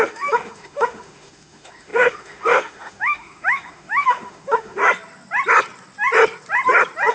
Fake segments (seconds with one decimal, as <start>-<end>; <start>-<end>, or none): 0.0-4.8